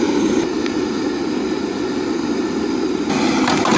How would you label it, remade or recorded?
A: recorded